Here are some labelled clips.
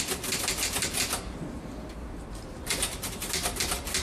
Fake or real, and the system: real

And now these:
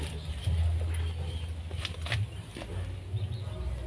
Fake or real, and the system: real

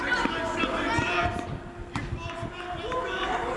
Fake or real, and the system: real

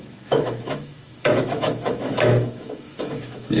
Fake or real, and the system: fake, autoencoder, DAC-VAE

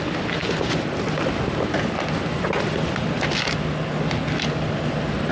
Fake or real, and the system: real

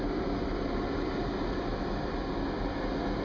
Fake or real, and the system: real